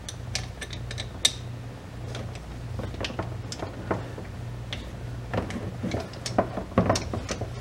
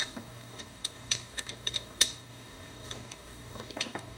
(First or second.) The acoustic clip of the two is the first